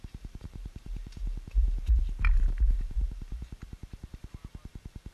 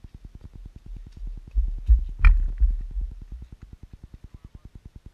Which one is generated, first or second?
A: first